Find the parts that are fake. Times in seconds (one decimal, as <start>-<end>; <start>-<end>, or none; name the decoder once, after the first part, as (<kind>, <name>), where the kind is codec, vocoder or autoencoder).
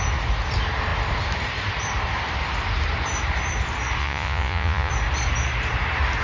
4.0-4.9 (vocoder, Vocos)